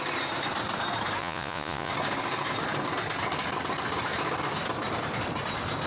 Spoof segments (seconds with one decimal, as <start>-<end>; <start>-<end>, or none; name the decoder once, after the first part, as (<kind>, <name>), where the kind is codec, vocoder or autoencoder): 1.2-1.9 (vocoder, Vocos)